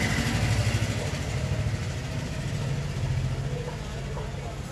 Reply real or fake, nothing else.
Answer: real